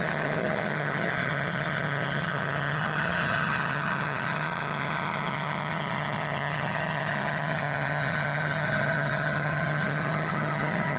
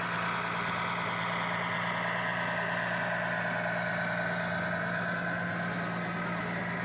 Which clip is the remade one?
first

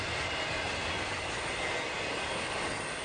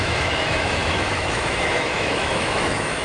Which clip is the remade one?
second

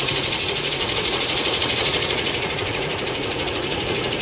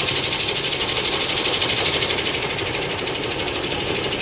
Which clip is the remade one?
first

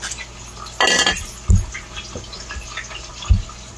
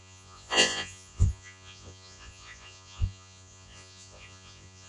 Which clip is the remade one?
second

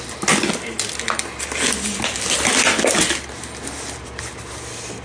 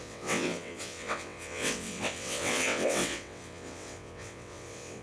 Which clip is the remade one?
second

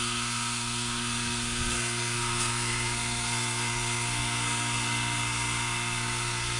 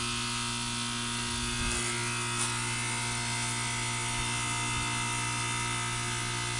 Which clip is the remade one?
first